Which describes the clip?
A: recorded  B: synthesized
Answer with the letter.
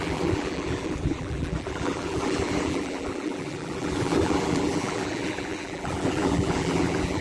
B